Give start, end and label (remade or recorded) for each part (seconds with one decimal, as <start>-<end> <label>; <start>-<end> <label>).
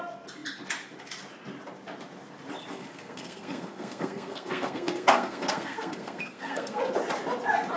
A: 0.0-2.7 recorded; 2.7-6.8 remade; 6.8-7.8 recorded